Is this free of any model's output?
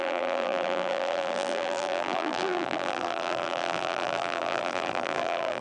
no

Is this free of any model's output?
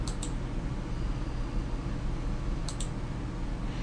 yes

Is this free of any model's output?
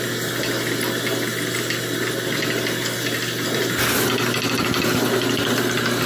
yes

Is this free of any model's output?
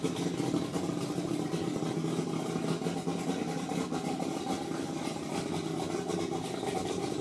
yes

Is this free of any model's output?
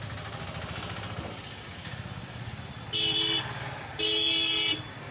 yes